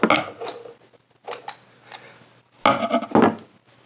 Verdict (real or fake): real